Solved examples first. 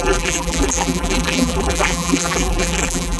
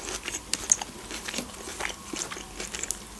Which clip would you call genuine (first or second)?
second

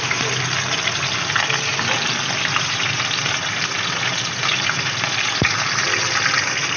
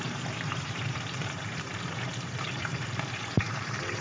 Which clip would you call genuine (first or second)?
first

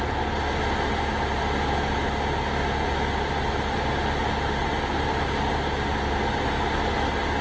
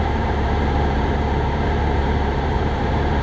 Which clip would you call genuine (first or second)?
first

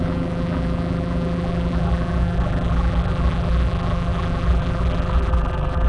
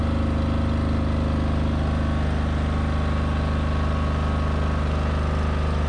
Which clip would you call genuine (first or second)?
second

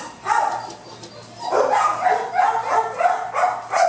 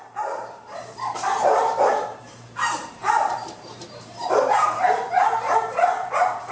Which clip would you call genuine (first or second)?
first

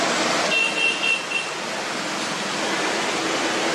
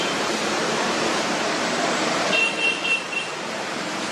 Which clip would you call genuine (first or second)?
first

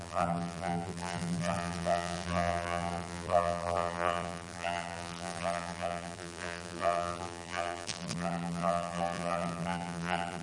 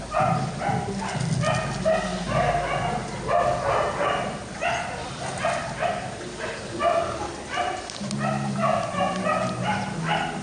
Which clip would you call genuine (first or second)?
second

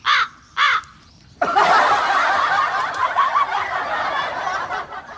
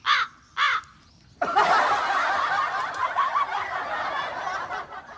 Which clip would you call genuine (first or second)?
second